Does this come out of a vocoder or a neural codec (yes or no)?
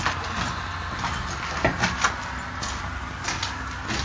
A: no